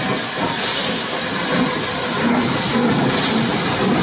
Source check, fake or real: real